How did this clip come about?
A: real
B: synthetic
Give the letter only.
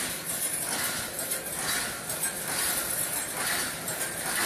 A